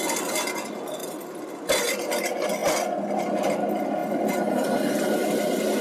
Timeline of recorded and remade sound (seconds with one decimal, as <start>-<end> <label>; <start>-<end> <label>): 0.0-5.8 recorded